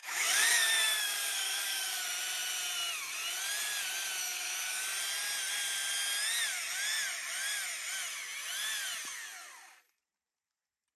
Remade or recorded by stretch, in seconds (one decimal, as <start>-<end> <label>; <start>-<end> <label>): 0.0-2.0 remade; 2.0-4.2 recorded; 4.2-4.8 remade; 4.8-11.0 recorded